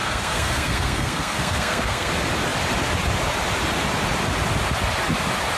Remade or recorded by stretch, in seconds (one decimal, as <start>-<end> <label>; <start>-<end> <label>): 0.0-2.1 remade; 2.1-5.6 recorded